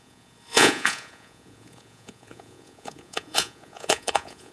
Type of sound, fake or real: fake